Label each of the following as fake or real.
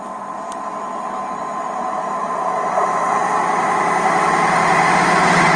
real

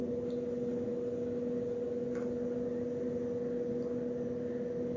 real